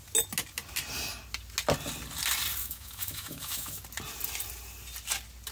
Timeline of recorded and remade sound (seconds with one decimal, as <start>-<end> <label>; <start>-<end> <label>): 0.0-2.6 recorded; 2.6-3.8 remade; 3.8-5.5 recorded